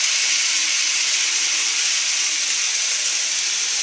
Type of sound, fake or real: real